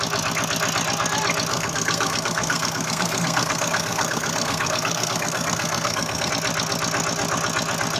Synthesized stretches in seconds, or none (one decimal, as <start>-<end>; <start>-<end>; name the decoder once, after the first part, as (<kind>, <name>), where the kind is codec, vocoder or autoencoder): 1.5-6.3 (codec, SNAC)